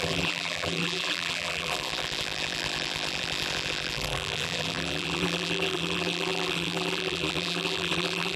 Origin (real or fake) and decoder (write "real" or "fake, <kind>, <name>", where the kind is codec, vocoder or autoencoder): fake, vocoder, BigVGAN v2